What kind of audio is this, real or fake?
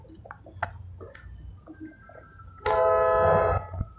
real